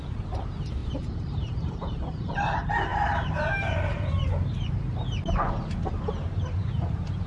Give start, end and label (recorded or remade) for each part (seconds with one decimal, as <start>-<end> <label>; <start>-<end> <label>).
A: 0.0-7.3 remade